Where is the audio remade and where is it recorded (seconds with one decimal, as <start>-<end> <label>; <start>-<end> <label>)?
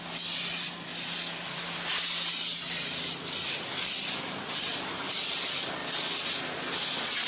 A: 0.0-0.9 recorded; 0.9-5.1 remade; 5.1-7.3 recorded